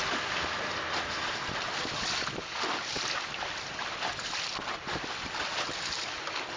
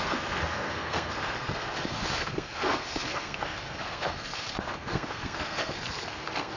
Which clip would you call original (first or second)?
first